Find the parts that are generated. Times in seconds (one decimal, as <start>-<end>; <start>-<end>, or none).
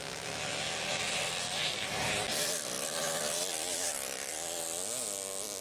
0.9-4.3